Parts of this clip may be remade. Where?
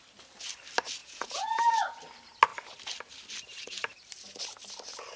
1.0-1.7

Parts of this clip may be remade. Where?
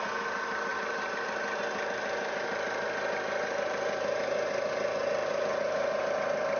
none